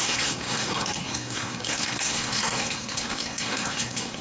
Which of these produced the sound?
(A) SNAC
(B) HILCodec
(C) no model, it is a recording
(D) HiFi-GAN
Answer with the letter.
A